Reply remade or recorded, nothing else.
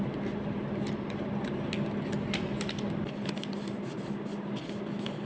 recorded